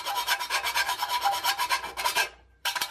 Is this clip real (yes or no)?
no